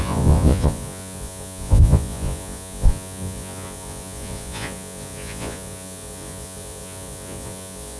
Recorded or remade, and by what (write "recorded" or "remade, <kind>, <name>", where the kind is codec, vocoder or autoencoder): remade, vocoder, Vocos